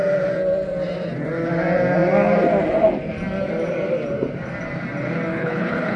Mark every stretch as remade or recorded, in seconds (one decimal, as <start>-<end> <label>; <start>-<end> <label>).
0.0-5.3 recorded; 5.3-6.0 remade